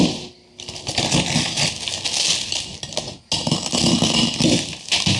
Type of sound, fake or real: real